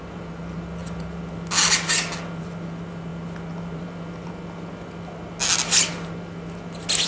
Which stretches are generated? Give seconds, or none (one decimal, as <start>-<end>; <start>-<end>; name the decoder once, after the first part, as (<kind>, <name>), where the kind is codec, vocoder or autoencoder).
none